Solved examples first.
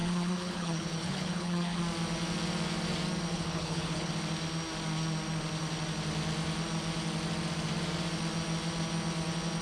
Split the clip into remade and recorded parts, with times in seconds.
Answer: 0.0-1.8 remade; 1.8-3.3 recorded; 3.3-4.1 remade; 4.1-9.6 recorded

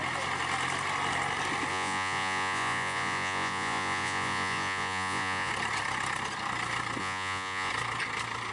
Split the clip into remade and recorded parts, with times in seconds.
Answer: 0.0-1.7 recorded; 1.7-5.5 remade; 5.5-7.0 recorded; 7.0-7.7 remade; 7.7-8.5 recorded